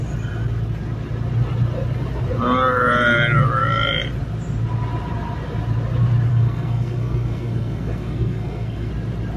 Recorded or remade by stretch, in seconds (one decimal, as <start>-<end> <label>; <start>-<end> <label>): 0.0-6.3 recorded; 6.3-8.9 remade; 8.9-9.4 recorded